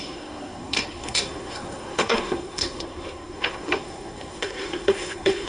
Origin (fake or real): fake